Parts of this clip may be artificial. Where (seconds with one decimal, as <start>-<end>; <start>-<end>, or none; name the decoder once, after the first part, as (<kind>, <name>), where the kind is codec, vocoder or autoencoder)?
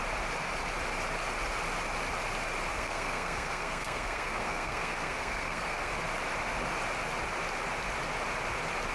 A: 2.7-5.9 (codec, SNAC)